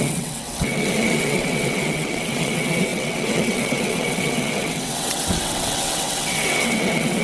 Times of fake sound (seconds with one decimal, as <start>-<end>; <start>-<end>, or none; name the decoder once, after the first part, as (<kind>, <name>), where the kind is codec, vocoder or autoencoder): 0.0-7.2 (vocoder, WaveNeXt)